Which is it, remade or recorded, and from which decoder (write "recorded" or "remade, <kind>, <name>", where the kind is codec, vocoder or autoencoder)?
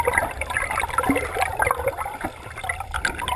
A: recorded